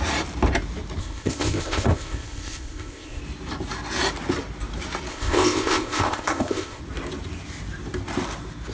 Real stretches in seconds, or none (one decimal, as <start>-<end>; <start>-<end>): 0.0-1.0; 3.2-5.1; 6.8-8.7